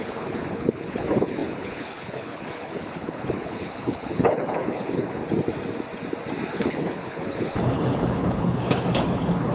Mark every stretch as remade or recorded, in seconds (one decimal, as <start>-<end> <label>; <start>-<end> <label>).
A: 0.0-5.2 remade; 5.2-6.5 recorded; 6.5-9.5 remade